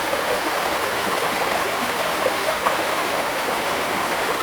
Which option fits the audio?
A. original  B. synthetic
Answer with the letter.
B